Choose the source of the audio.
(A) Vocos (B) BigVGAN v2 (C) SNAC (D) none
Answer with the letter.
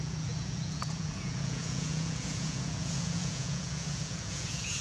A